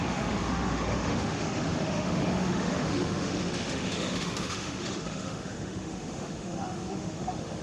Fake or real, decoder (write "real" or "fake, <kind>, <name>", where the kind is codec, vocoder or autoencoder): fake, autoencoder, DAC-VAE